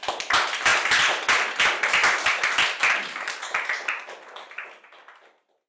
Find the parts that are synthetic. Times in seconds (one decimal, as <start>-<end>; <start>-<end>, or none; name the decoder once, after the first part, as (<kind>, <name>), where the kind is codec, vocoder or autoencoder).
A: 0.7-1.3 (vocoder, BigVGAN v2)